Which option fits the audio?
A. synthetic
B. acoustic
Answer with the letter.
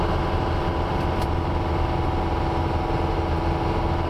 B